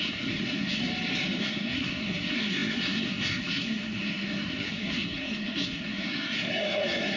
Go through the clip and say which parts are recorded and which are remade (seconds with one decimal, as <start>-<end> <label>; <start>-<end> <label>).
0.0-0.8 remade; 0.8-1.4 recorded; 1.4-7.2 remade